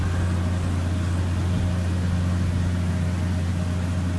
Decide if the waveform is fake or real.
real